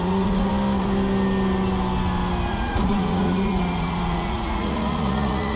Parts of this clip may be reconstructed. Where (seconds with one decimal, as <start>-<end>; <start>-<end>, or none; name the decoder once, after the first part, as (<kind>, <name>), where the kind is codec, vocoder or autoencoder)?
0.0-0.5 (vocoder, Vocos); 2.5-5.6